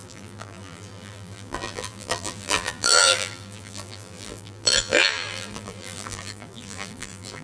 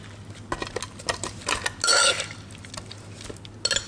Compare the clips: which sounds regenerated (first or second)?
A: first